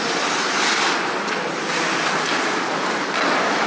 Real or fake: real